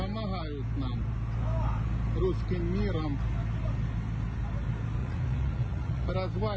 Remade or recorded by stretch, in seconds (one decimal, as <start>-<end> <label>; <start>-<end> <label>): 0.0-5.0 recorded; 5.0-6.1 remade; 6.1-6.6 recorded